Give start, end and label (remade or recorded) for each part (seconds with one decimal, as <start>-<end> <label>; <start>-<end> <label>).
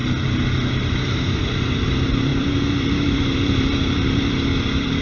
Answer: 0.0-0.7 recorded; 0.7-5.0 remade